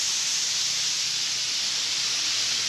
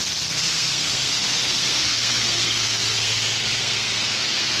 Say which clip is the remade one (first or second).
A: second